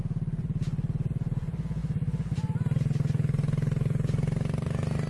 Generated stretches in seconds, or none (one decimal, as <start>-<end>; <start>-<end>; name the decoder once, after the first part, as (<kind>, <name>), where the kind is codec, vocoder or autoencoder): none